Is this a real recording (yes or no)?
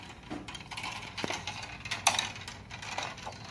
yes